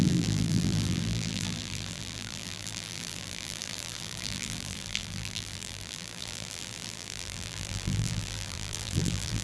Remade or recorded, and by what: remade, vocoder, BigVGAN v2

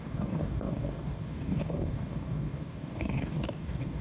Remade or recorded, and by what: remade, codec, DAC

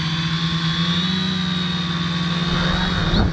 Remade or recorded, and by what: recorded